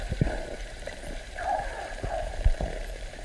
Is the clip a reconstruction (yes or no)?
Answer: yes